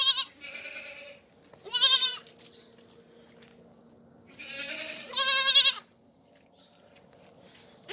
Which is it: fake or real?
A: real